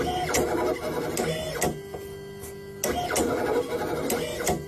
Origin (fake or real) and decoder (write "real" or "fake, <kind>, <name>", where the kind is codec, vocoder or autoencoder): real